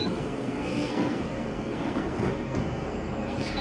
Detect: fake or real fake